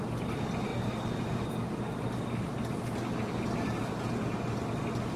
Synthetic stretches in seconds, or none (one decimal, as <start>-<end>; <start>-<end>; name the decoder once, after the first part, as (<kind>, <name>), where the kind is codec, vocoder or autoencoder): none